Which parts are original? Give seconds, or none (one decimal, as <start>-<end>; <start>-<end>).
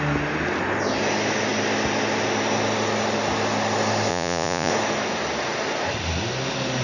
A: 0.0-4.1; 4.7-6.8